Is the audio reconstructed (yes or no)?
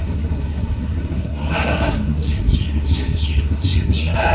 yes